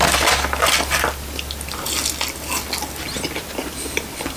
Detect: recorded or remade recorded